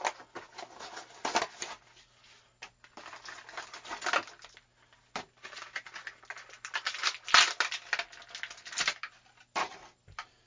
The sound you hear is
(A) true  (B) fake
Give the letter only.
A